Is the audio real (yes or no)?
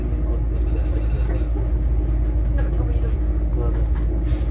yes